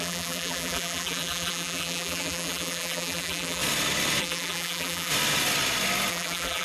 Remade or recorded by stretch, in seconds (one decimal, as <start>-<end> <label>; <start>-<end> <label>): 0.0-3.6 remade; 3.6-4.2 recorded; 4.2-5.1 remade; 5.1-6.1 recorded; 6.1-6.6 remade

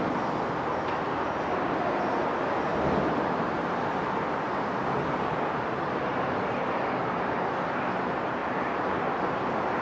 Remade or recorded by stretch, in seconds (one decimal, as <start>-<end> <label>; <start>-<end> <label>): 0.0-2.7 recorded; 2.7-7.4 remade; 7.4-8.4 recorded; 8.4-9.2 remade; 9.2-9.8 recorded